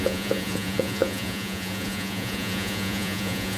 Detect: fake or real fake